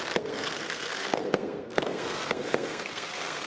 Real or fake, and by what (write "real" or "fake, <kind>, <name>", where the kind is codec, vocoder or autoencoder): fake, codec, SNAC